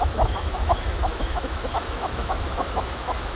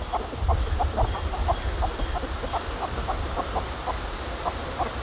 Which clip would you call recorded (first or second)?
second